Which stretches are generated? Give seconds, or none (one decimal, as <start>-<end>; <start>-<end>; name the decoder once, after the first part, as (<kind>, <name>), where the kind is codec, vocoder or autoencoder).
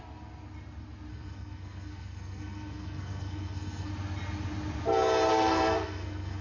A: 1.1-3.9 (codec, SNAC); 5.3-6.4